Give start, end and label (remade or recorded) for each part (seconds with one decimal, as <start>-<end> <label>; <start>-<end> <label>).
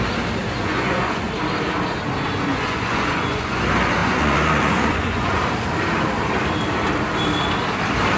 0.0-0.6 recorded; 0.6-1.3 remade; 1.3-2.5 recorded; 2.5-3.6 remade; 3.6-4.0 recorded; 4.0-5.4 remade; 5.4-8.2 recorded